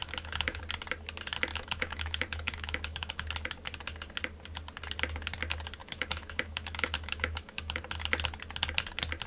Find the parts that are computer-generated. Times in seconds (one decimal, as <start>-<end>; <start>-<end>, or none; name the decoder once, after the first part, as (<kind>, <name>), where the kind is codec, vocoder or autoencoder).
0.0-0.6 (autoencoder, DAC-VAE); 1.5-3.2; 5.8-7.8